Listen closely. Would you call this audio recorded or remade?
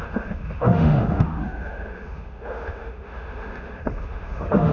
remade